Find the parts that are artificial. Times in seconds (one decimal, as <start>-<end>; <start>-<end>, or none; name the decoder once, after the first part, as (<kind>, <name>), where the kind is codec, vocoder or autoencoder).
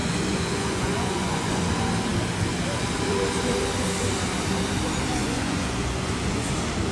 0.0-1.6 (vocoder, Vocos); 5.2-6.5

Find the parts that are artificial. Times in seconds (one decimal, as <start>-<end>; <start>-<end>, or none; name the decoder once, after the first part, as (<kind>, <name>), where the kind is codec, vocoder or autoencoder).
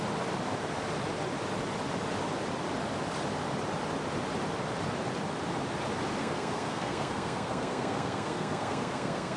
6.2-9.4 (codec, SNAC)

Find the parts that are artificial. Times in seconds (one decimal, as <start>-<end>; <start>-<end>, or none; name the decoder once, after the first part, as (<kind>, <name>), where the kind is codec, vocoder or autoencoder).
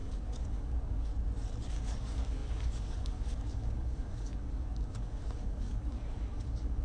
0.0-1.1 (codec, DAC); 1.7-6.8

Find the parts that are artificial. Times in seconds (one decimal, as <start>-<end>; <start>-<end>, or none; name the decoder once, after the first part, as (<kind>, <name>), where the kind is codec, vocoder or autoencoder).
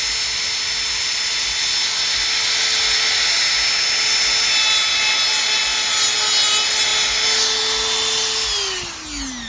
none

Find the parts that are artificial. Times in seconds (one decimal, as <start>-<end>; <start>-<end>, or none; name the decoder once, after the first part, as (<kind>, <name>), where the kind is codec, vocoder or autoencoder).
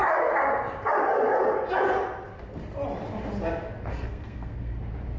3.9-4.8 (codec, SNAC)